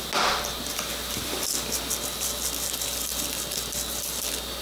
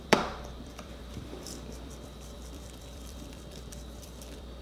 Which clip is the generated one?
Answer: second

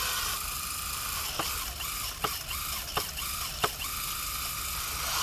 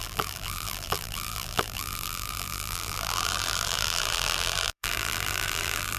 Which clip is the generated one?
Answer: second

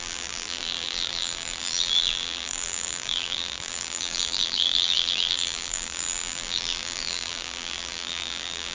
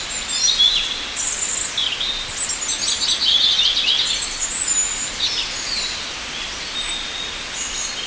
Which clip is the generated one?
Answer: first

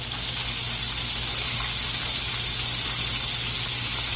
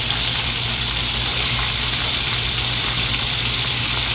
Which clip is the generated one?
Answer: second